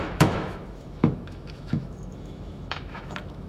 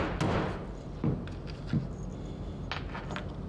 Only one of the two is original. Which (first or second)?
second